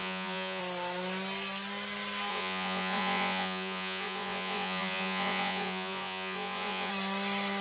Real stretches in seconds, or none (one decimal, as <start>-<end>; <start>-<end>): 0.6-2.3; 6.9-7.6